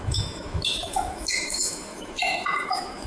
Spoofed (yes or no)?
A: yes